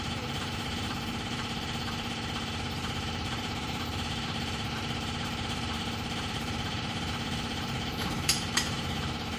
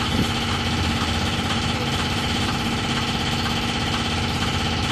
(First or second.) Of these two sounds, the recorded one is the second